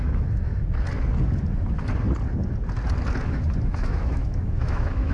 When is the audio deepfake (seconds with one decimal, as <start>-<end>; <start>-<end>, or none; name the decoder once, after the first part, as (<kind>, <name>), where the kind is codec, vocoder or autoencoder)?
0.0-0.5 (autoencoder, DAC-VAE); 3.6-5.1